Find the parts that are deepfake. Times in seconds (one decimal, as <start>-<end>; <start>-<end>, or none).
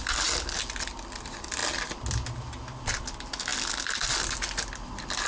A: none